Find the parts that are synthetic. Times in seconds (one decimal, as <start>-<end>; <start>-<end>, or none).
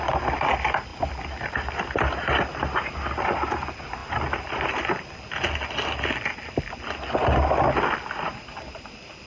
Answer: none